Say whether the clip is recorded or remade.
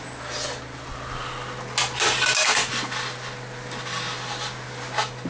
recorded